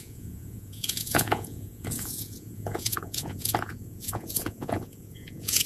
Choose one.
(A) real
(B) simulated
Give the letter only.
B